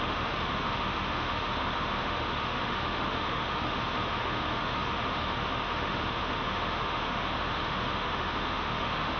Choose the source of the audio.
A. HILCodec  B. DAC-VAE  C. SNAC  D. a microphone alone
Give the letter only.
B